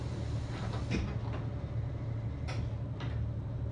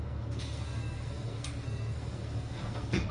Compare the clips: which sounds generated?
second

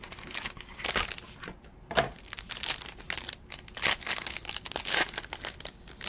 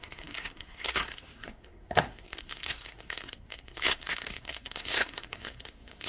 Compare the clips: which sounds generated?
second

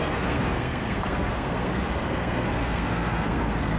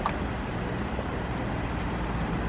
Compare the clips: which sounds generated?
first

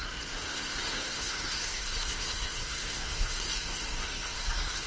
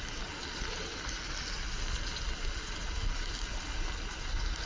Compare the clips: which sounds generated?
first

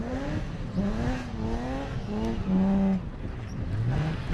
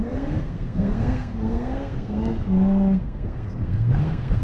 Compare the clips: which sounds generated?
second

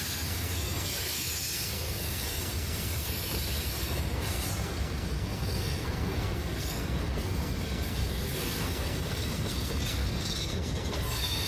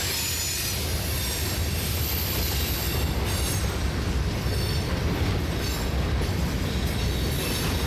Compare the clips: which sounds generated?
first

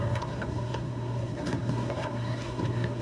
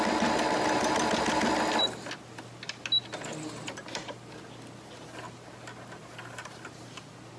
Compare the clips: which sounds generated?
first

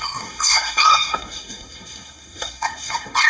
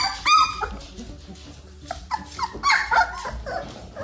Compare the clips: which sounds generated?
first